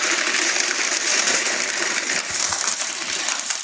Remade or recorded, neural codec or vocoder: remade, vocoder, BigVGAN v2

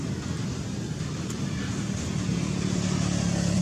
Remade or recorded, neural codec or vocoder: recorded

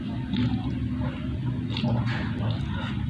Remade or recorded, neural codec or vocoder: recorded